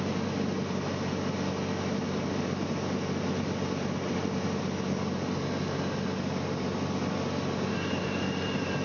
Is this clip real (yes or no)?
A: yes